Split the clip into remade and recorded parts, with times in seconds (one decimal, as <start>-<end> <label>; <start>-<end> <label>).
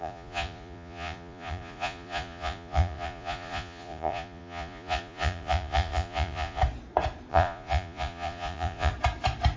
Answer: 0.0-6.6 remade; 6.6-7.3 recorded; 7.3-8.9 remade; 8.9-9.6 recorded